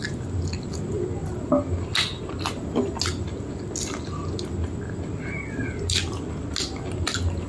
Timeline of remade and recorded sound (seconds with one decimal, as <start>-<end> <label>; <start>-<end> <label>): 0.0-7.5 recorded